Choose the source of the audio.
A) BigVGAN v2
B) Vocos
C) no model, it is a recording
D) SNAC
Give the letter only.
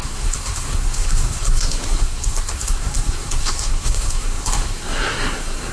D